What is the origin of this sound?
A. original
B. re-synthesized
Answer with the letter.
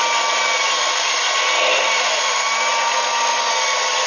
A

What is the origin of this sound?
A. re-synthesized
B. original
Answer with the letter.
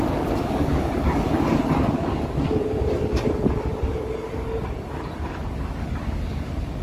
A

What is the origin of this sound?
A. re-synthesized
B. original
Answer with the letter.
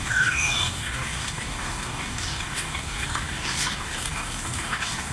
A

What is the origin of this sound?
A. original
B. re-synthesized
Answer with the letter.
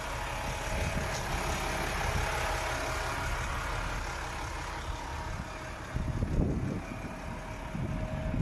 A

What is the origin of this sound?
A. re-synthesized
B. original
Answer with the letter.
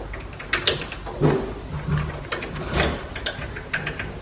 B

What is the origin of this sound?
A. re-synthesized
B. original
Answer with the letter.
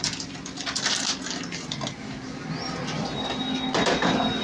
B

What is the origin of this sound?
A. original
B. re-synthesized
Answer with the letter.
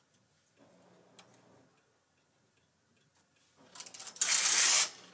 A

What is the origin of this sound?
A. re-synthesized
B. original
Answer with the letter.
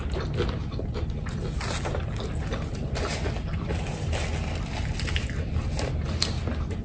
B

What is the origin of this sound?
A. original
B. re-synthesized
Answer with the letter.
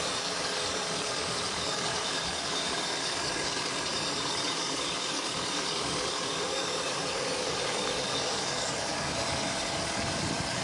B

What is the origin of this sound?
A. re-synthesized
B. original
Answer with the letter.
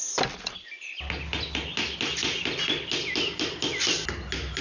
B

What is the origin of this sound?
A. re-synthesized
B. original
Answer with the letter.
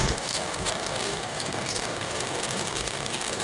A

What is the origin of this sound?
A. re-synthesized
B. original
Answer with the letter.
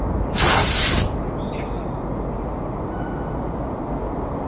B